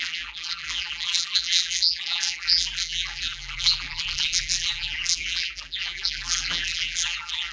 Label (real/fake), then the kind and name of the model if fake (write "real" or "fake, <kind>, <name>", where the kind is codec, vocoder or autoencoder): fake, vocoder, BigVGAN v2